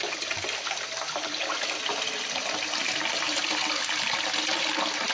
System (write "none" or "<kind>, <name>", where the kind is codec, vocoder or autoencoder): none